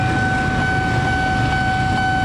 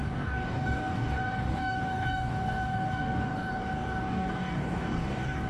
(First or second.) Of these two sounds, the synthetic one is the second